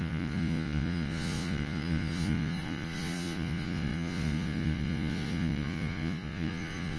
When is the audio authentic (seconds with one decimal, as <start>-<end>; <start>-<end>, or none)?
none